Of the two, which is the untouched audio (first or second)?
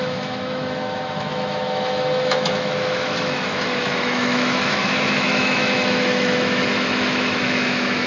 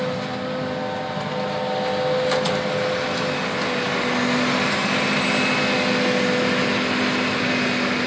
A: second